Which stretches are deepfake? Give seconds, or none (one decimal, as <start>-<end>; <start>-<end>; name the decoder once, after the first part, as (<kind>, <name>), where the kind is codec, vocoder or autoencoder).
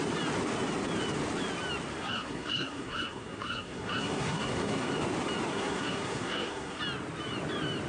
2.0-4.9 (codec, SNAC); 5.5-6.8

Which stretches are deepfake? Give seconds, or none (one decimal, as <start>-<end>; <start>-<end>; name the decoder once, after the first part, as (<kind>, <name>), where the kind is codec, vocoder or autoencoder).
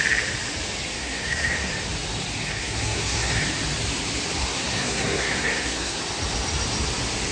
0.9-1.7 (codec, SNAC); 2.5-3.4; 4.4-6.0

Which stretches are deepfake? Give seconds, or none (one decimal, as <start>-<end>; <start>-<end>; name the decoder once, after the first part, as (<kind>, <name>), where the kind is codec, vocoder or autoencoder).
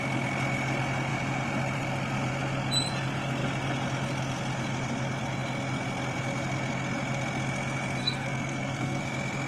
8.0-9.0 (codec, SNAC)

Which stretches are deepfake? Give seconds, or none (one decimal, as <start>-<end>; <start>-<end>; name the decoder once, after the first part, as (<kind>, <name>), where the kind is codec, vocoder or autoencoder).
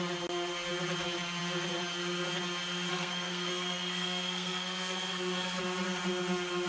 2.9-5.6 (codec, SNAC)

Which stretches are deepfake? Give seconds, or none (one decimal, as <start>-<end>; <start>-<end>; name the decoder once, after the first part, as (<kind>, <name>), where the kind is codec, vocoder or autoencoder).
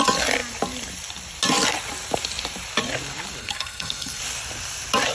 3.4-4.2 (codec, SNAC)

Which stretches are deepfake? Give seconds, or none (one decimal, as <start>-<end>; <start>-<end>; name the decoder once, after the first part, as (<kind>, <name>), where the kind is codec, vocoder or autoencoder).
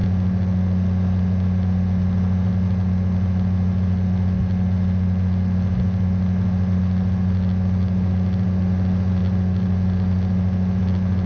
none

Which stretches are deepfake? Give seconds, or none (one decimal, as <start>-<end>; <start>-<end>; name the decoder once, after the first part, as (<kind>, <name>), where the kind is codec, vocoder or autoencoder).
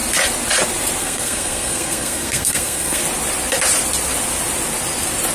1.0-3.0 (codec, SNAC)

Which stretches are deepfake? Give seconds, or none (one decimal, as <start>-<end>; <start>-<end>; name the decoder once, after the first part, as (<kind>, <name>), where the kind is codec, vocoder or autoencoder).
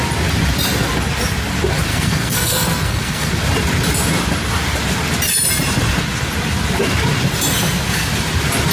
1.9-3.3 (codec, SNAC)